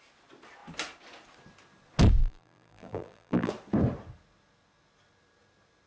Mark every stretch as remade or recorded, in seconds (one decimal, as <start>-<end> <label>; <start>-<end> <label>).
0.0-2.2 recorded; 2.2-3.5 remade; 3.5-5.9 recorded